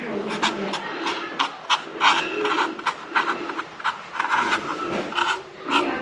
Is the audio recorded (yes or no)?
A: yes